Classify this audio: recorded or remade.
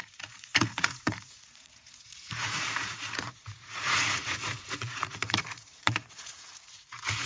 remade